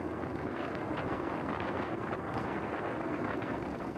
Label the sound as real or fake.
fake